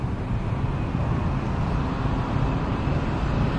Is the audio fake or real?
fake